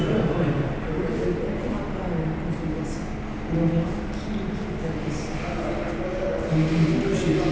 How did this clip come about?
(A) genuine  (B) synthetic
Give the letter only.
A